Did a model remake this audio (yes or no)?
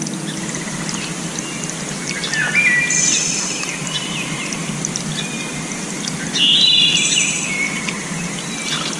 no